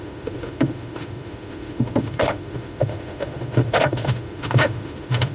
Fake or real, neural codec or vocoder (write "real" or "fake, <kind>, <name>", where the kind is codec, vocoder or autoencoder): fake, autoencoder, DAC-VAE